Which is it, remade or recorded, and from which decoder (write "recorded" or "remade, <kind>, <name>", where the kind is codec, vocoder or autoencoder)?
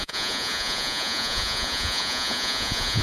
remade, vocoder, Vocos